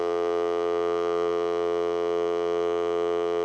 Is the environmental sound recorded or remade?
remade